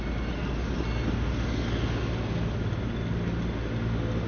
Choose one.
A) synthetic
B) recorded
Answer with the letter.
B